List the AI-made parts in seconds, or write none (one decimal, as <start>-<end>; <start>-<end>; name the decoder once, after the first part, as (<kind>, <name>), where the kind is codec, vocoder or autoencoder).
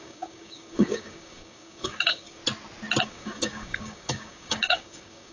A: 0.0-2.4 (codec, DAC); 3.0-5.3